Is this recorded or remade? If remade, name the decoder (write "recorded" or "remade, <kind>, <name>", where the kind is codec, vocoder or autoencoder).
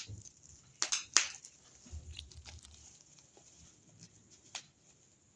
recorded